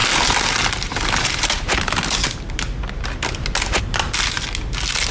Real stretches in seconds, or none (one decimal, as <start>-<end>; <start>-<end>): 0.0-1.2; 1.7-5.1